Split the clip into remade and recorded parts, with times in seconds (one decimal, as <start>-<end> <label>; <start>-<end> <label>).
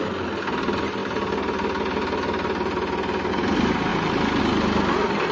0.0-3.9 recorded; 3.9-4.4 remade; 4.4-5.3 recorded